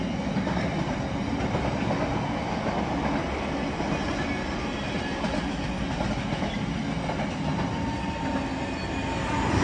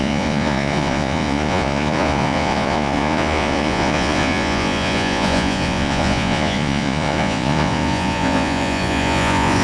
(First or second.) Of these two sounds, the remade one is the second